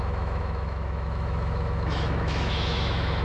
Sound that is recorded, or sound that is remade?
remade